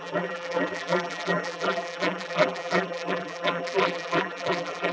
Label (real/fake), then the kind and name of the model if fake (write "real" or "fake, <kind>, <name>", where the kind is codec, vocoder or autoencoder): fake, vocoder, BigVGAN v2